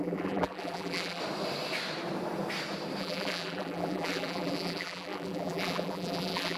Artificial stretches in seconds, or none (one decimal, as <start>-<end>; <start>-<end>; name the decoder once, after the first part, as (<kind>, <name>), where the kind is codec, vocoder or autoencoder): 0.0-1.2 (vocoder, BigVGAN v2); 3.0-6.6